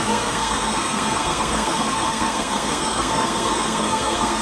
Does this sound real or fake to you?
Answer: fake